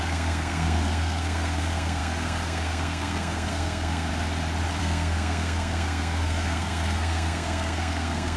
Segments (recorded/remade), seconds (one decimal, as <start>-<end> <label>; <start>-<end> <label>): 0.0-4.1 remade; 4.1-4.8 recorded; 4.8-8.4 remade